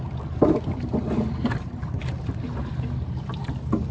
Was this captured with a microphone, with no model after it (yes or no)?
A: yes